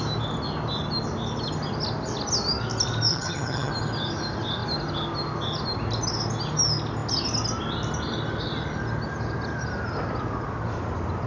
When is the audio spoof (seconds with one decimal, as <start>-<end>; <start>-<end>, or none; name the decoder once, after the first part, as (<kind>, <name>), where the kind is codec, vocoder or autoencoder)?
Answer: 3.1-3.7 (vocoder, HiFi-GAN)